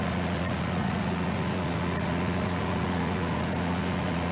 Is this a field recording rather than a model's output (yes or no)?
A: no